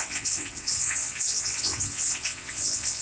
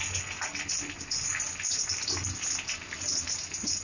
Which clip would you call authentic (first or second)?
second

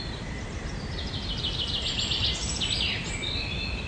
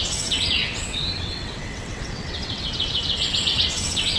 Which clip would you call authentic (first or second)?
first